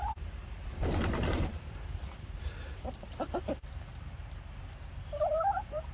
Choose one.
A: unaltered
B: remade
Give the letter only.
B